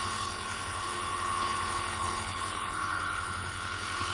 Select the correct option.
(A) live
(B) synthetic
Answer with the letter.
B